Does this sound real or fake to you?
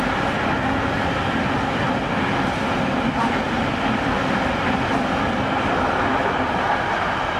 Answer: real